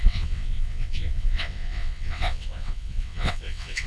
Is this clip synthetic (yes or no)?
yes